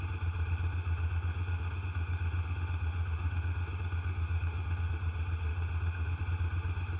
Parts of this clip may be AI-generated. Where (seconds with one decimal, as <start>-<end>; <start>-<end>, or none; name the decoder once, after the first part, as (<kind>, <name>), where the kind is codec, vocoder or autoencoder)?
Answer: 0.7-4.9 (autoencoder, DAC-VAE); 5.5-6.2